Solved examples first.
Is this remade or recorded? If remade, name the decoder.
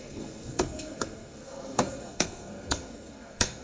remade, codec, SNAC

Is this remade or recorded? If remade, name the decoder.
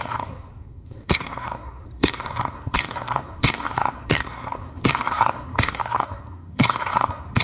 remade, codec, SNAC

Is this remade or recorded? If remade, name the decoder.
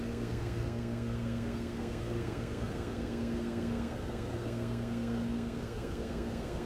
remade, codec, SNAC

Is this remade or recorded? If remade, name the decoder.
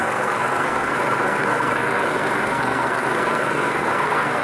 remade, codec, SNAC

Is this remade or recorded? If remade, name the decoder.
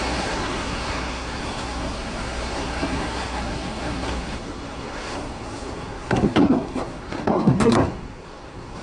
remade, codec, SNAC